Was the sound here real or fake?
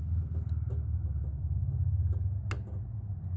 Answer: real